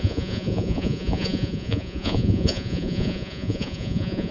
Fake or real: fake